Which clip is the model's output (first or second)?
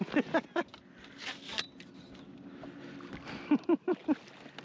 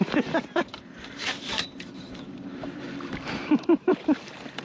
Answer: second